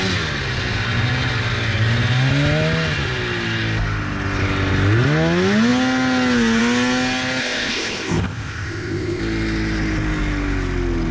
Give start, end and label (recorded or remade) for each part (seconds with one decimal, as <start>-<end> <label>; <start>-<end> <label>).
0.0-7.4 recorded; 7.4-9.2 remade; 9.2-11.1 recorded